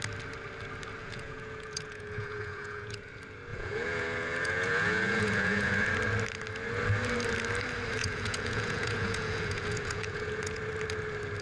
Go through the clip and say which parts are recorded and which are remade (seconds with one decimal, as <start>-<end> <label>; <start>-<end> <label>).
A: 0.0-1.0 recorded; 1.0-3.1 remade; 3.1-3.5 recorded; 3.5-5.9 remade; 5.9-8.0 recorded; 8.0-10.6 remade; 10.6-11.4 recorded